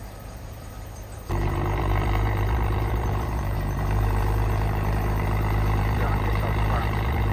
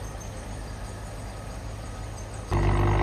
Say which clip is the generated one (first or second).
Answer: first